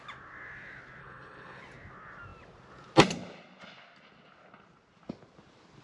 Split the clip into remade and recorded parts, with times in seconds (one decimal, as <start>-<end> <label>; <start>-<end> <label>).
0.0-1.0 recorded; 1.0-1.6 remade; 1.6-5.8 recorded